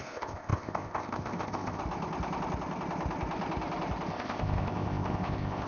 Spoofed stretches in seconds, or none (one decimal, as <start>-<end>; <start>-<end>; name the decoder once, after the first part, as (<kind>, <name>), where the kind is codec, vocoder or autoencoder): 0.0-1.8 (codec, ZipCodec); 4.1-5.7